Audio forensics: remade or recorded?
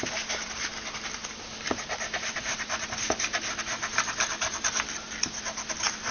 recorded